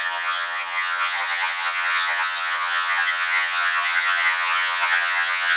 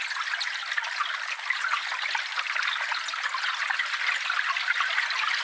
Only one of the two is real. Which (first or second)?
second